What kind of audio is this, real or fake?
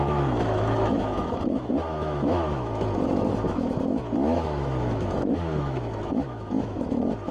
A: fake